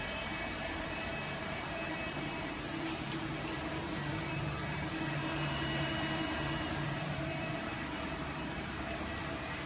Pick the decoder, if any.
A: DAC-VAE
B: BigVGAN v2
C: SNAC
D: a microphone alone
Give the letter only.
B